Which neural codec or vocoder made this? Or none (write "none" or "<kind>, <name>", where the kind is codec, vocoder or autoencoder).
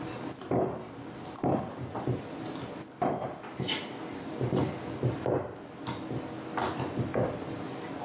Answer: none